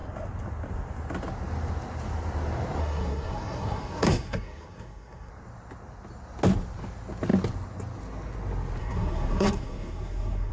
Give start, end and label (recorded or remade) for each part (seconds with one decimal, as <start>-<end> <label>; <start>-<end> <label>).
0.0-2.8 recorded; 2.8-5.3 remade; 5.3-8.8 recorded; 8.8-10.5 remade